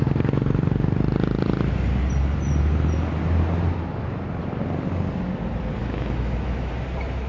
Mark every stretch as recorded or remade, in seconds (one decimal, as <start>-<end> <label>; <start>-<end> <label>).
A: 0.0-5.8 recorded; 5.8-6.7 remade; 6.7-7.3 recorded